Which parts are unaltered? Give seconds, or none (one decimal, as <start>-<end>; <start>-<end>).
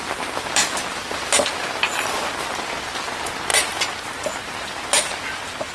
0.0-5.7